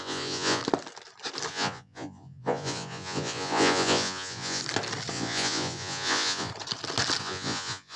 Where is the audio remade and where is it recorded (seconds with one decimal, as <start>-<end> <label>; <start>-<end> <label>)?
0.0-0.6 remade; 0.6-1.5 recorded; 1.5-4.6 remade; 4.6-5.1 recorded; 5.1-6.5 remade; 6.5-7.2 recorded; 7.2-8.0 remade